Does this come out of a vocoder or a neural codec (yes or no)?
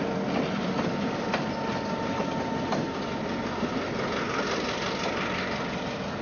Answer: no